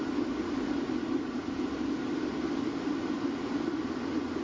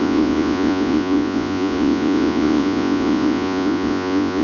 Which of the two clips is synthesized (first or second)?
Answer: second